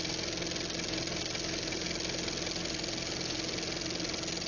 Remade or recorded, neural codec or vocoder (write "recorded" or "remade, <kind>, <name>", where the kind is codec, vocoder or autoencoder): recorded